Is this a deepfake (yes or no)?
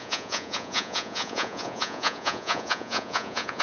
yes